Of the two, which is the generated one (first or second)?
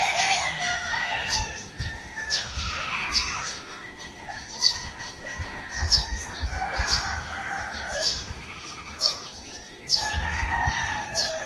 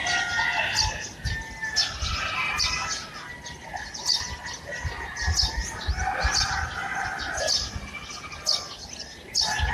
first